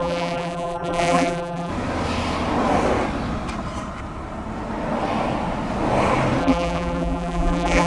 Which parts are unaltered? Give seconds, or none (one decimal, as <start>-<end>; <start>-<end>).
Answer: 1.7-6.4